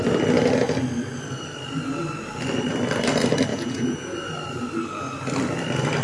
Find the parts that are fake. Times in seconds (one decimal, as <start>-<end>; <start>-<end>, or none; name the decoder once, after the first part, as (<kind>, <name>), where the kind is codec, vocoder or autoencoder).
3.5-4.3 (vocoder, Vocos)